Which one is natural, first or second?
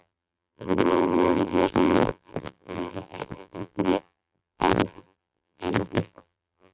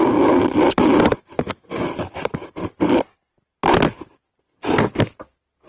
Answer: second